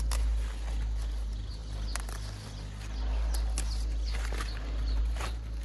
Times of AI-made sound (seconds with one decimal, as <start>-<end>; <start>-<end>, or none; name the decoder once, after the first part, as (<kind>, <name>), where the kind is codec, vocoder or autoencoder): none